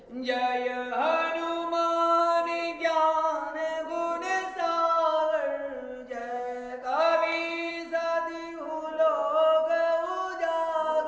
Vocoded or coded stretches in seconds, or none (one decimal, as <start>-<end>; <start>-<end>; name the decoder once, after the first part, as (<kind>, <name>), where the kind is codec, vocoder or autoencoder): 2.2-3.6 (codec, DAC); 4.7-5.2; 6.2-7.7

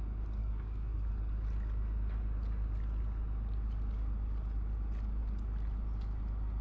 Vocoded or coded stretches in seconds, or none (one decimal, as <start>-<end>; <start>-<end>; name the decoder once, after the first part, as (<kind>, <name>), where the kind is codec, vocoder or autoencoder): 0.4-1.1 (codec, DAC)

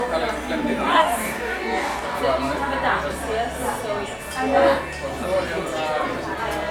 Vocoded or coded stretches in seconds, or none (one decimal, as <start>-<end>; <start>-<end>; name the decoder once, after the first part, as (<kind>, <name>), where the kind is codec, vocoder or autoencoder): 0.9-2.2 (codec, DAC)

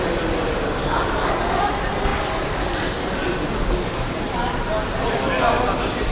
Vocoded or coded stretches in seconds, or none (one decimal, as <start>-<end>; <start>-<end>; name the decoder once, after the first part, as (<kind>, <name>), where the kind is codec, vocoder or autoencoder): 0.8-1.4 (codec, DAC)

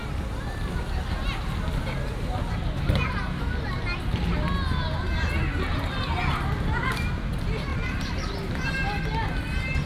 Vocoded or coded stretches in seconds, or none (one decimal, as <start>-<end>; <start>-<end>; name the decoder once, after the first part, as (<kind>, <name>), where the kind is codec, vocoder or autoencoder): none

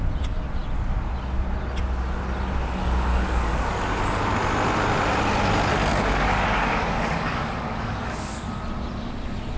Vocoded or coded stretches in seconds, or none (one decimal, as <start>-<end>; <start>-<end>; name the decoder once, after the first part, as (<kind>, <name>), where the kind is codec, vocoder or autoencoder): 3.1-4.0 (codec, DAC); 5.9-8.5